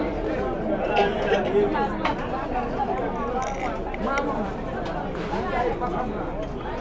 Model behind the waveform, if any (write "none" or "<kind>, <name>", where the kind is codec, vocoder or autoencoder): none